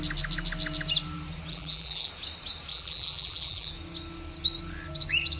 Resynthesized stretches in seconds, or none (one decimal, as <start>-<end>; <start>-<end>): 1.5-2.1; 2.7-3.7